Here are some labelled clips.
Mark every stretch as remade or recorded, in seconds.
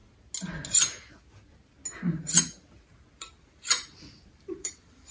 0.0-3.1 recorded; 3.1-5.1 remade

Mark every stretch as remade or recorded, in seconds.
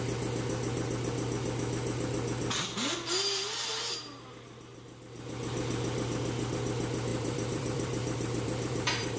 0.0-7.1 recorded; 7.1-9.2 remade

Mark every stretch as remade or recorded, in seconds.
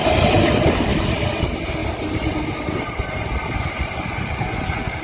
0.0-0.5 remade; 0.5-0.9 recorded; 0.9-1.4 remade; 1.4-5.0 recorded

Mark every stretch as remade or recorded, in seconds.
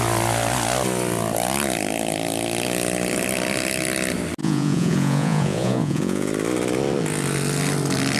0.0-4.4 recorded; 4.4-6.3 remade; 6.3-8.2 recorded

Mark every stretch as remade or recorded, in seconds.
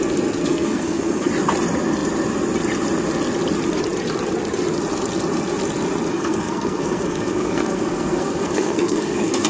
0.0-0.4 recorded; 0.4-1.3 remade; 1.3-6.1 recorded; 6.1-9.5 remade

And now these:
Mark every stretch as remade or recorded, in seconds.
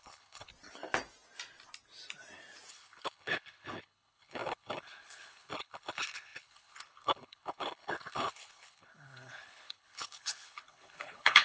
0.0-0.5 remade; 0.5-2.7 recorded; 2.7-11.4 remade